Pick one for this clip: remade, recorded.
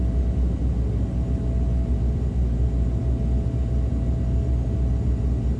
recorded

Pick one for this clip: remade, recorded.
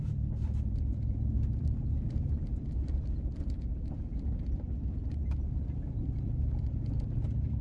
remade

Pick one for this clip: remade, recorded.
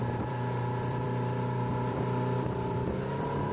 remade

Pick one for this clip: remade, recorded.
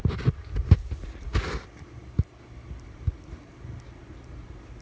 recorded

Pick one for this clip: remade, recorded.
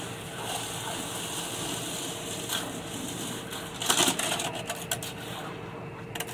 recorded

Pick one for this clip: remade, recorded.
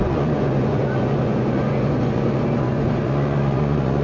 remade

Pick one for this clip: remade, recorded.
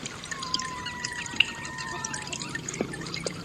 remade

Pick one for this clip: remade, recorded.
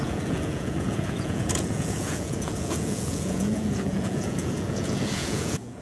remade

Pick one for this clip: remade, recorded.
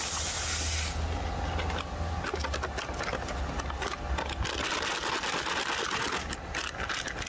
recorded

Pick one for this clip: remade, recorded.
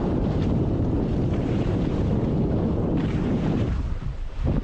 remade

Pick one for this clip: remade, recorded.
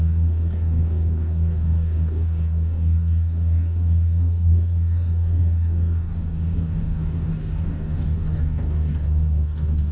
remade